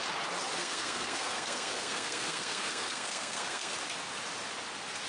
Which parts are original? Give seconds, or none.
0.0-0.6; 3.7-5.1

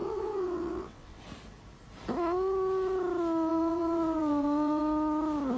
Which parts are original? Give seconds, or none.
1.2-3.5; 4.8-5.6

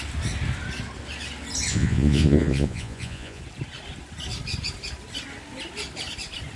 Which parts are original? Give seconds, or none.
0.0-1.7; 3.4-6.6

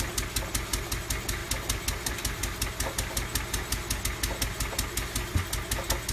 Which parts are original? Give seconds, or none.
0.0-6.1

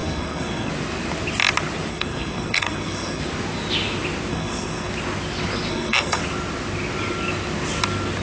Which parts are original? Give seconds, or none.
0.7-1.9; 3.2-4.3; 4.9-5.7; 6.2-8.2

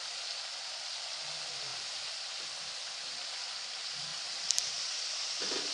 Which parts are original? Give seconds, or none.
0.0-1.7; 2.3-4.1; 5.1-5.7